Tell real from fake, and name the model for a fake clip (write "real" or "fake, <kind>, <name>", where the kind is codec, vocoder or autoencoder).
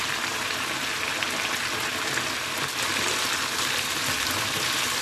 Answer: real